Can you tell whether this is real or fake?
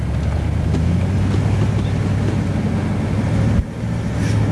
real